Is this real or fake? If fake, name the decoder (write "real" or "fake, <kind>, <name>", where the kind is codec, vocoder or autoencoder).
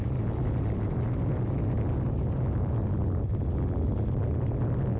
real